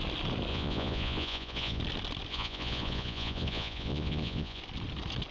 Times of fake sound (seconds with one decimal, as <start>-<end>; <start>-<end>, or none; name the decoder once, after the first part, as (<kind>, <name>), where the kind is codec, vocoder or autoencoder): 0.5-1.8 (vocoder, Vocos); 2.3-4.6